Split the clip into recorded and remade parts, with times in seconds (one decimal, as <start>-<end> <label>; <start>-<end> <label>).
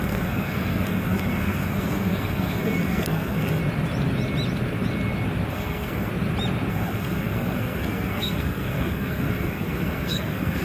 0.0-3.6 remade; 3.6-5.5 recorded; 5.5-6.1 remade; 6.1-6.7 recorded; 6.7-10.6 remade